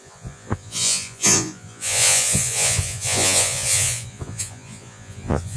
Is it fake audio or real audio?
fake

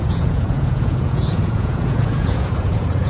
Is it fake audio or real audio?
fake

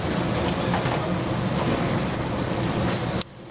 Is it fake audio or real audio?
real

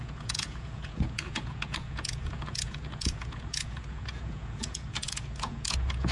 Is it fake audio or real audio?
fake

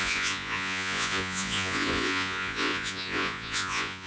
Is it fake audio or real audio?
fake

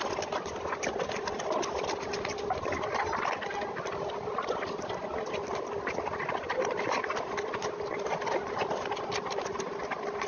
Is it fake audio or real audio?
real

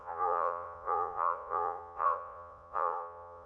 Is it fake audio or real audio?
fake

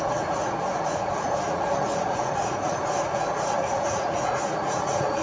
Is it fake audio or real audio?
fake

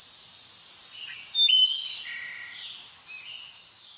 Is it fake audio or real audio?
real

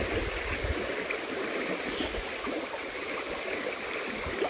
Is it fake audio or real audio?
real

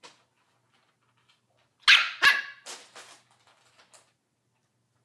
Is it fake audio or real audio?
real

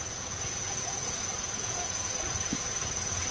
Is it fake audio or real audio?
fake